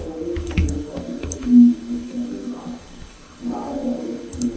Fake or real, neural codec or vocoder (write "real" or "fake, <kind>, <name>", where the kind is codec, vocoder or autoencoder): fake, codec, SNAC